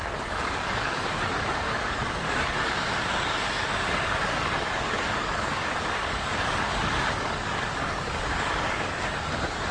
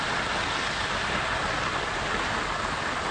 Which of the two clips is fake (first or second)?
first